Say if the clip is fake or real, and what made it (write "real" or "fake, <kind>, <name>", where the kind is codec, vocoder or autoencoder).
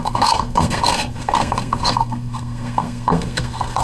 fake, codec, SNAC